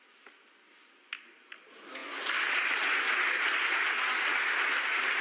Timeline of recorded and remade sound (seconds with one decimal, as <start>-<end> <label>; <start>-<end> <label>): 0.0-5.2 recorded

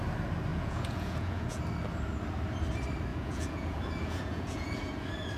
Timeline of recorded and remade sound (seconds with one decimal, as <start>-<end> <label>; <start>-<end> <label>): 0.0-0.5 recorded; 0.5-1.6 remade; 1.6-3.1 recorded; 3.1-4.9 remade; 4.9-5.4 recorded

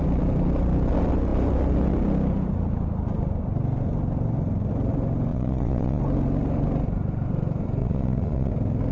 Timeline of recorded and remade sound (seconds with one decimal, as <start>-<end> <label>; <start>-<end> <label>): 0.0-5.3 recorded; 5.3-6.0 remade; 6.0-7.8 recorded; 7.8-8.5 remade; 8.5-8.9 recorded

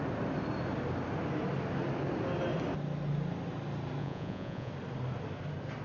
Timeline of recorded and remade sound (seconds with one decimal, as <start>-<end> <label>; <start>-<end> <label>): 0.0-4.0 recorded; 4.0-4.7 remade; 4.7-5.8 recorded